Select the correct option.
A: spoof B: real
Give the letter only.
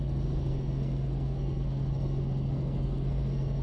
A